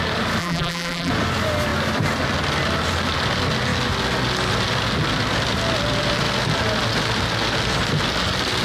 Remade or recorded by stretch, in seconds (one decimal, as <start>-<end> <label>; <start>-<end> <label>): 0.0-0.4 recorded; 0.4-1.1 remade; 1.1-8.6 recorded